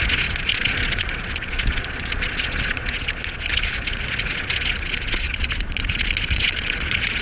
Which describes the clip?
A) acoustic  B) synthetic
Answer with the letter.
B